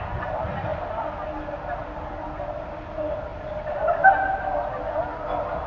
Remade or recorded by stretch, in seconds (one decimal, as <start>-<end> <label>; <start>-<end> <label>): 0.0-5.7 recorded